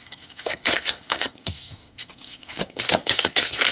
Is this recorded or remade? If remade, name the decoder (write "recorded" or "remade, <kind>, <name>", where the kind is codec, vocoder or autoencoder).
remade, codec, SNAC